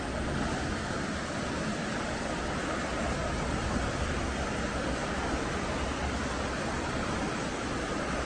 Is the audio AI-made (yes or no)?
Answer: no